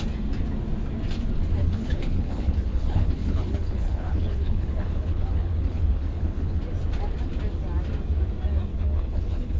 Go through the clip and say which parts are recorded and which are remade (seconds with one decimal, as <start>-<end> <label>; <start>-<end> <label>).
0.0-1.6 recorded; 1.6-6.6 remade; 6.6-8.7 recorded; 8.7-9.6 remade